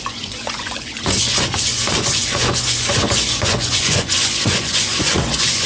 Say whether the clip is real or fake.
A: fake